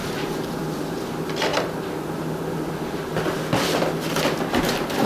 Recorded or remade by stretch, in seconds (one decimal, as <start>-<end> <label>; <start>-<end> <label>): 0.0-0.6 remade; 0.6-5.1 recorded

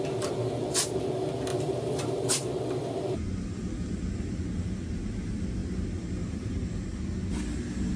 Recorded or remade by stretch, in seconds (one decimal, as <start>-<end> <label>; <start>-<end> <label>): 0.0-1.5 recorded; 1.5-2.3 remade; 2.3-8.0 recorded

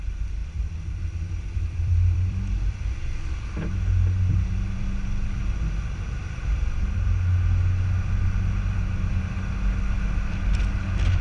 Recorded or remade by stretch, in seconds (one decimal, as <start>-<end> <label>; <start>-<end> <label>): 0.0-0.4 recorded; 0.4-2.4 remade; 2.4-11.2 recorded

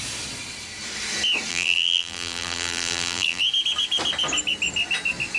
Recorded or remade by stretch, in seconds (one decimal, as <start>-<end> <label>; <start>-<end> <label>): 0.0-1.5 recorded; 1.5-3.4 remade; 3.4-5.4 recorded